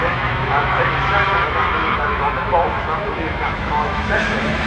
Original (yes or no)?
no